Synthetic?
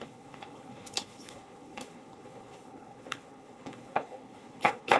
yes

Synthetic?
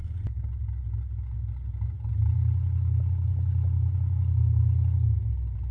no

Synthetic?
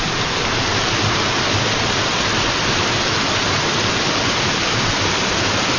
no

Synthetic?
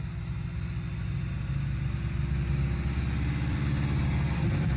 no